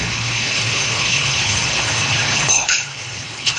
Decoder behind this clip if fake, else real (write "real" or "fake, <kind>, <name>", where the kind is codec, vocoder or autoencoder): fake, codec, HILCodec